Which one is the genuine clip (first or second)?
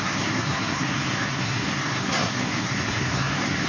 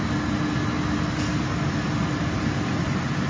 second